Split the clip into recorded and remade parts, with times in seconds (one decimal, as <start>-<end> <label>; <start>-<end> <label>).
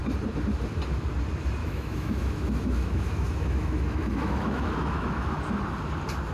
0.0-1.6 recorded; 1.6-5.4 remade; 5.4-6.3 recorded